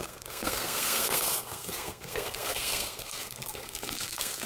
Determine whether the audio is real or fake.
fake